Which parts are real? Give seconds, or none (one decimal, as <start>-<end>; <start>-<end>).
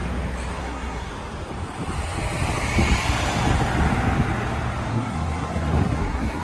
0.0-0.6; 1.1-4.9